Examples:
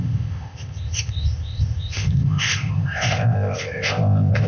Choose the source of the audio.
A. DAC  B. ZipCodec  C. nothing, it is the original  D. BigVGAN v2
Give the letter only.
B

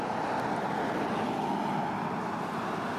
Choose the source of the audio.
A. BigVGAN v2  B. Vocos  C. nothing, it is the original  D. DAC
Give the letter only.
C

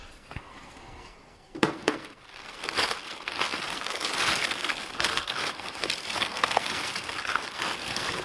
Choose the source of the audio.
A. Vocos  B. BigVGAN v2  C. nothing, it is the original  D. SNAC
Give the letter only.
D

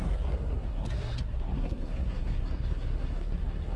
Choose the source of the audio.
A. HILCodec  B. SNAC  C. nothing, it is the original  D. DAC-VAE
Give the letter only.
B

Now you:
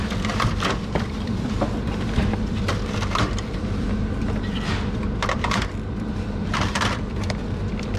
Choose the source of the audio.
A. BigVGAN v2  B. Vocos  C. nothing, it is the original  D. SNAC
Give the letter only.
A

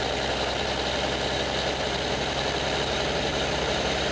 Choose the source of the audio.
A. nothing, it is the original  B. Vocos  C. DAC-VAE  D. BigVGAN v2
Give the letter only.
A